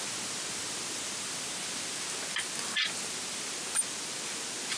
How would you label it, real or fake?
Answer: real